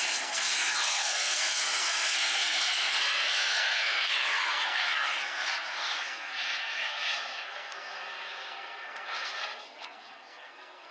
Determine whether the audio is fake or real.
fake